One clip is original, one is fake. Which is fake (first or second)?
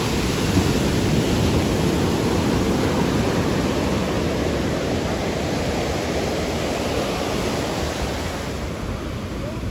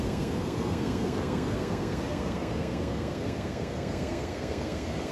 second